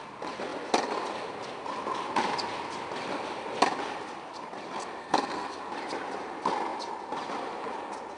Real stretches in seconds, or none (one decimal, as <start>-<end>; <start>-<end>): 0.0-5.0; 5.6-8.2

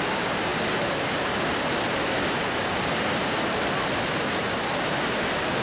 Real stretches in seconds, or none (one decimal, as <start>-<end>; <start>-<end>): 0.0-5.6

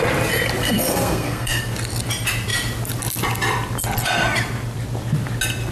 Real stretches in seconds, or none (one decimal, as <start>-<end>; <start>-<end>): 0.0-0.6; 1.6-5.7

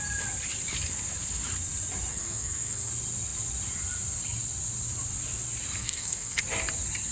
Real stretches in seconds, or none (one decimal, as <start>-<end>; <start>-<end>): 0.0-2.1; 2.9-5.8; 6.4-7.1